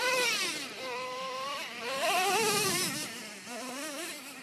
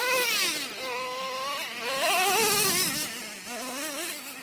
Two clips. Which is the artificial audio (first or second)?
first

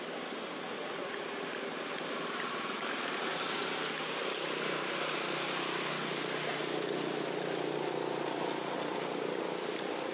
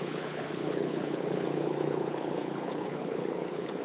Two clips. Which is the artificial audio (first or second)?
second